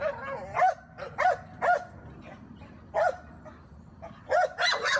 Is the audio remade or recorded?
recorded